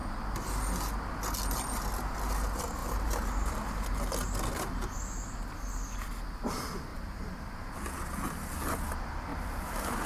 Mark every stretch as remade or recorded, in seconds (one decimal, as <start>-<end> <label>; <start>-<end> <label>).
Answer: 0.0-2.8 recorded; 2.8-3.8 remade; 3.8-6.9 recorded; 6.9-7.8 remade; 7.8-9.3 recorded; 9.3-10.1 remade